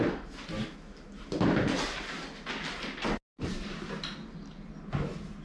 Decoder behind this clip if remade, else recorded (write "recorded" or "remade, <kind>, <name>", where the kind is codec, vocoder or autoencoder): recorded